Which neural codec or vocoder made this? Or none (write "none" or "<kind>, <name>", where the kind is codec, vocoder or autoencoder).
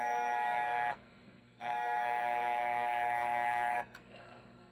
codec, SNAC